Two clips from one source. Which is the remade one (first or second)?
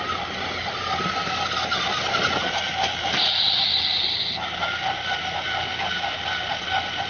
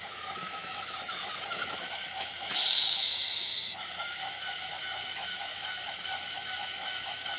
second